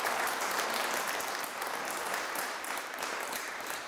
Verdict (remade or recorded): remade